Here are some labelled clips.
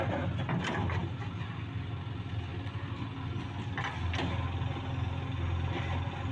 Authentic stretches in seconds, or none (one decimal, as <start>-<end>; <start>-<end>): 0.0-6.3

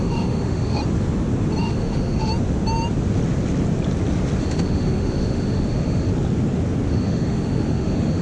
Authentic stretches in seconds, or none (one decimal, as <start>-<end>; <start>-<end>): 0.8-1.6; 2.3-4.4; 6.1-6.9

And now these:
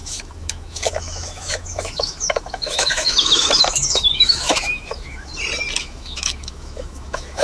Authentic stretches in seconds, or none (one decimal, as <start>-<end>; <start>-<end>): 5.3-5.8

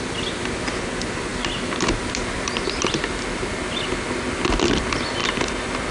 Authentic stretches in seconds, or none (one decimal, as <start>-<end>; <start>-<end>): 0.0-5.9

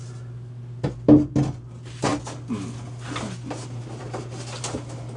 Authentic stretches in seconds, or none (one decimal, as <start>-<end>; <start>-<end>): 0.0-5.2

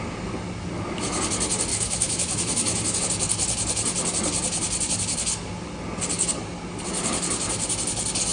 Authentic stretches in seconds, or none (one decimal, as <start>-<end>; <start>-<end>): 0.0-1.7; 3.0-8.3

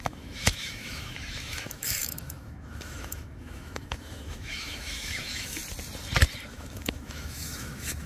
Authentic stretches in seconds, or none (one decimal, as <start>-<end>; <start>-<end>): 5.6-6.5

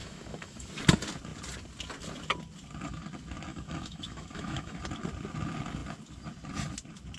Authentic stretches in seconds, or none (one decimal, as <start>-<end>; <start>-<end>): 0.7-3.5; 4.8-7.2